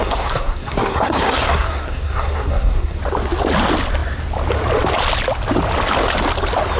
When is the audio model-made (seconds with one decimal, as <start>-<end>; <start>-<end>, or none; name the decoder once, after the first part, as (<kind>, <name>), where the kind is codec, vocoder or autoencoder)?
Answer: 0.0-3.0 (codec, SNAC)